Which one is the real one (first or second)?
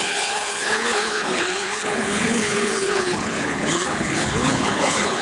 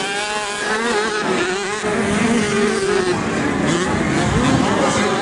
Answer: second